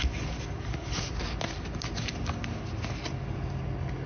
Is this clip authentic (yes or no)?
yes